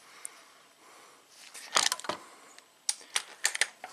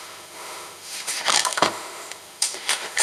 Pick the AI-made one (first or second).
second